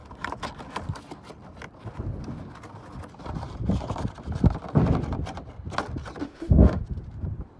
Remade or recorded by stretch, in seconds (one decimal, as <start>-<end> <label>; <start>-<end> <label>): 0.0-6.2 recorded; 6.2-6.8 remade; 6.8-7.6 recorded

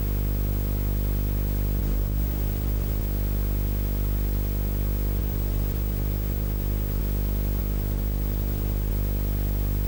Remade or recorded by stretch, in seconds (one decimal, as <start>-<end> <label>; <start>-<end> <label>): 0.0-1.8 recorded; 1.8-3.0 remade; 3.0-5.2 recorded; 5.2-7.0 remade; 7.0-7.6 recorded; 7.6-8.9 remade; 8.9-9.9 recorded

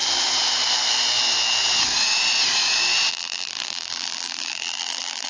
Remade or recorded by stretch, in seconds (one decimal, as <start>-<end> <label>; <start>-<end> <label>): 0.0-3.1 recorded; 3.1-5.3 remade

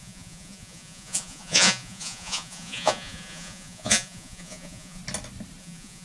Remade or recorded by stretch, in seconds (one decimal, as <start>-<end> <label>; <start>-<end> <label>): 0.0-5.0 remade; 5.0-5.6 recorded; 5.6-6.0 remade

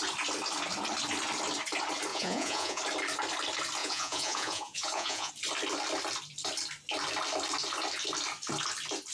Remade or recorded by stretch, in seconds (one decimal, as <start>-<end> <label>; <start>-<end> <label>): 0.0-2.1 recorded; 2.1-2.8 remade; 2.8-3.8 recorded; 3.8-5.3 remade; 5.3-9.1 recorded

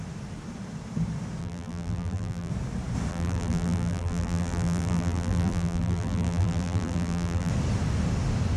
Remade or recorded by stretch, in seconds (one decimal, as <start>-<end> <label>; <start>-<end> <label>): 0.0-1.4 recorded; 1.4-2.5 remade; 2.5-3.1 recorded; 3.1-7.5 remade; 7.5-8.6 recorded